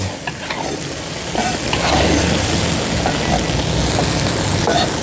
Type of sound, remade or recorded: recorded